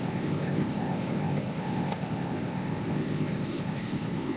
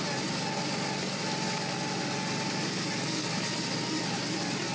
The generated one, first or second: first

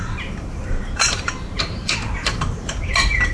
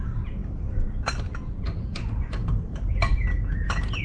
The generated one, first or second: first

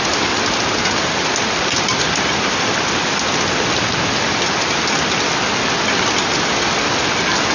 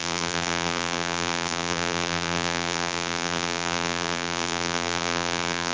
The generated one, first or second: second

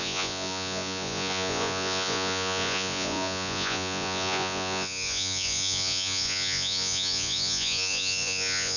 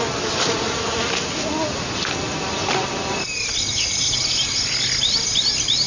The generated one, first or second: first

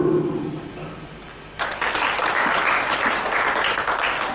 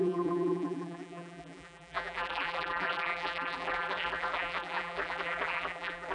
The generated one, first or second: second